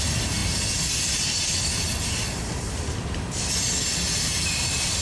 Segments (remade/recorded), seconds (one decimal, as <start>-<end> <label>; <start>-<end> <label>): 0.0-5.0 recorded